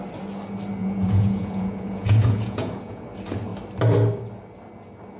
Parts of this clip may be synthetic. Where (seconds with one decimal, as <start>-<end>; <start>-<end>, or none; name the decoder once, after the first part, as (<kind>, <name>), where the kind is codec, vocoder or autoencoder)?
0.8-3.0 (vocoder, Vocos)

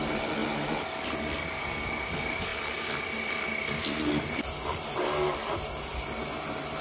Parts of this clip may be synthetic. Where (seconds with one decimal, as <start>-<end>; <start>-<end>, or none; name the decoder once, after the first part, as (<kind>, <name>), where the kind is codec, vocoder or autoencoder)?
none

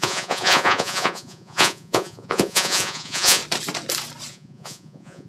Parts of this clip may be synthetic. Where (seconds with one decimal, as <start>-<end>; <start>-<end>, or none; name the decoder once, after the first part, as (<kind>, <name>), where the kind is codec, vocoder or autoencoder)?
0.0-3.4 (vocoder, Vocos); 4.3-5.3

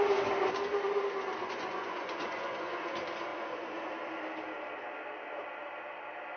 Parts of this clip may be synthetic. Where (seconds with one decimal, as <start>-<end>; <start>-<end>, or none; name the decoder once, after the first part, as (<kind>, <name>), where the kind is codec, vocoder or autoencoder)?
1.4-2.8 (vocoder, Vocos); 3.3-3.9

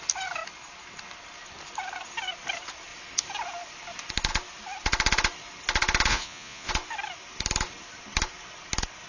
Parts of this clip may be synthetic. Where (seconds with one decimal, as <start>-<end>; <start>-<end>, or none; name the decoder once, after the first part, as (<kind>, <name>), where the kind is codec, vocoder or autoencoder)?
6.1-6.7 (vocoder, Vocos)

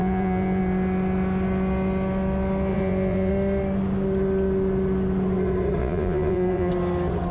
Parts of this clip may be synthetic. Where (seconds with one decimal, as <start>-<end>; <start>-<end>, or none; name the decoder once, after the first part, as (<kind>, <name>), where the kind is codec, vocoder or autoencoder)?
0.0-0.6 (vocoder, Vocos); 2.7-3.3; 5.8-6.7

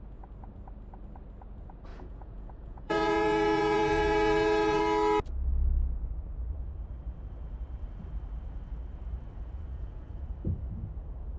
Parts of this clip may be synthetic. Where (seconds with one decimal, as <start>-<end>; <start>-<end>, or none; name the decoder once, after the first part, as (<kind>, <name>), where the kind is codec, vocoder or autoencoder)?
1.9-4.8 (vocoder, Vocos); 9.7-10.2

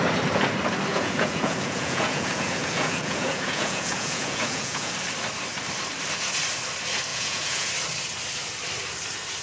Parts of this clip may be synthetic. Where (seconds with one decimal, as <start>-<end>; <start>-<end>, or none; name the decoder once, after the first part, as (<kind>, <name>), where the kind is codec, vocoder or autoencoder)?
0.9-4.9 (vocoder, Vocos); 7.1-7.7